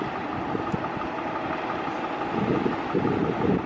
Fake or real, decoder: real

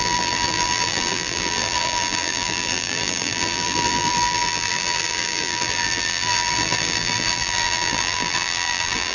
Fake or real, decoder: fake, vocoder, BigVGAN v2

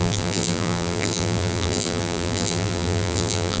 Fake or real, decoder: fake, vocoder, BigVGAN v2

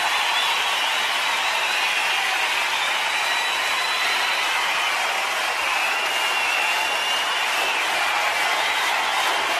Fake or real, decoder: real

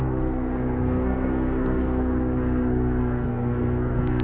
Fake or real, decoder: fake, codec, SNAC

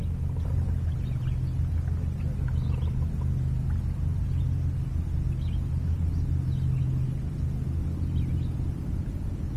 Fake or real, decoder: real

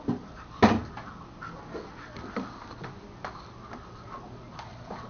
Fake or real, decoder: real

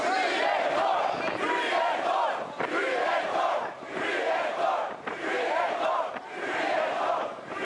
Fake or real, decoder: fake, vocoder, BigVGAN v2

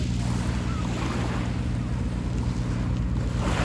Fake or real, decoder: real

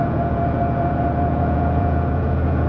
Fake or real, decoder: fake, vocoder, Vocos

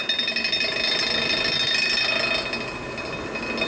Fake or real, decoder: real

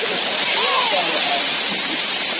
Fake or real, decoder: fake, vocoder, BigVGAN v2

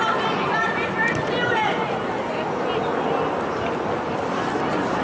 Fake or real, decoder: fake, vocoder, BigVGAN v2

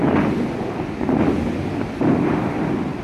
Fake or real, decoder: real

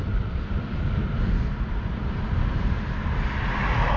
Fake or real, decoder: fake, vocoder, BigVGAN v2